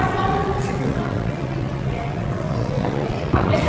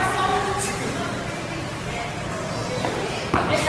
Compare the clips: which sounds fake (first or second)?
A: first